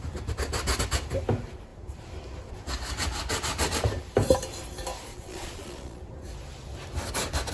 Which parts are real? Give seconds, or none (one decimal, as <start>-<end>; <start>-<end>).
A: 0.0-5.1; 6.0-7.5